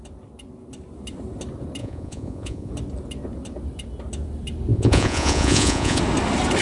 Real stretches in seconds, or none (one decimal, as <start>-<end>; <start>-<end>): 0.0-1.8; 2.7-4.7; 6.0-6.6